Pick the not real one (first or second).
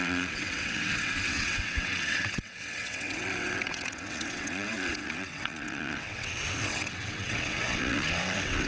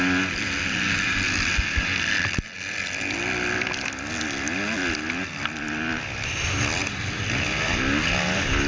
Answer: first